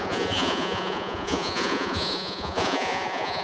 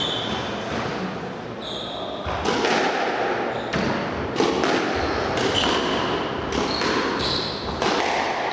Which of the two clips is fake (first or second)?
first